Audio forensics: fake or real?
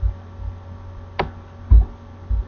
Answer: real